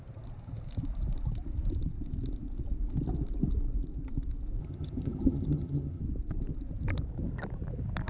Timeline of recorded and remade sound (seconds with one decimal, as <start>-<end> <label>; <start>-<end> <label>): 0.0-4.6 recorded; 4.6-6.0 remade; 6.0-8.1 recorded